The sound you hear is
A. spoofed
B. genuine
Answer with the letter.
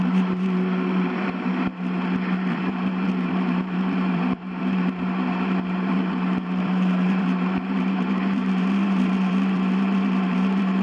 A